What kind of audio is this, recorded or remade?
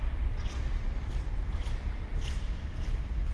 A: remade